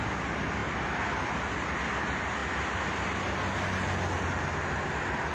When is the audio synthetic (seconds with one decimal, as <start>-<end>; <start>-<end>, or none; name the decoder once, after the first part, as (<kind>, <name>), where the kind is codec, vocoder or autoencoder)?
none